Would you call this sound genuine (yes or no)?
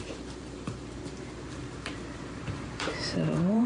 no